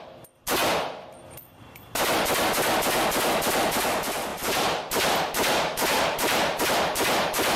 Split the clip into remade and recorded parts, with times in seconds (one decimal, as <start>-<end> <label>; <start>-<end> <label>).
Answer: 0.0-4.3 recorded; 4.3-6.6 remade; 6.6-7.6 recorded